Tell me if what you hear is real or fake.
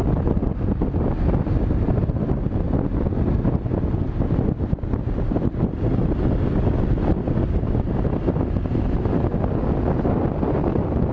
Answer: real